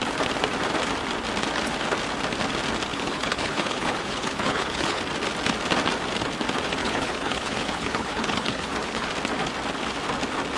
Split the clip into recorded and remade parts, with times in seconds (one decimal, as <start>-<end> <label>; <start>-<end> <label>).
0.0-2.9 recorded; 2.9-5.0 remade; 5.0-6.8 recorded; 6.8-9.1 remade; 9.1-10.6 recorded